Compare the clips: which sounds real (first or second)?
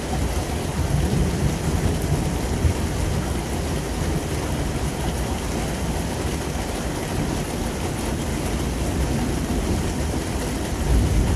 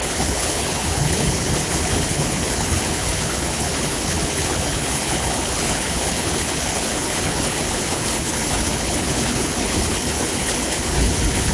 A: first